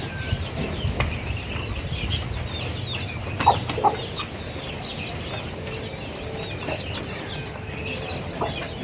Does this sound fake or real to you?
real